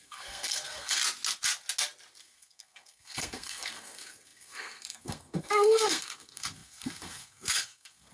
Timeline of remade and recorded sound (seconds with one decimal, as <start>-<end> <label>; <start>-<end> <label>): 0.0-1.0 remade; 1.0-2.2 recorded; 2.2-8.1 remade